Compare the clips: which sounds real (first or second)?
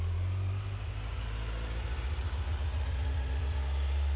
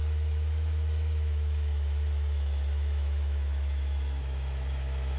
first